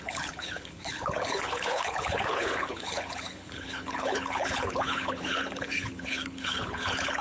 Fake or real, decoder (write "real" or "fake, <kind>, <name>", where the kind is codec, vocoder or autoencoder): fake, codec, HILCodec